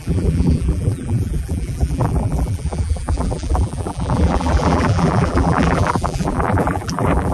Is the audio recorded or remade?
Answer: remade